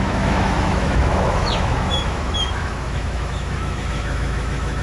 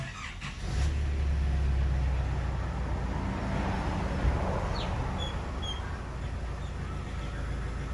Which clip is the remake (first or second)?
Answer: first